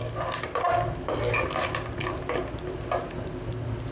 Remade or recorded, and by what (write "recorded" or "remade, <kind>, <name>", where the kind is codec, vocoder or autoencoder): recorded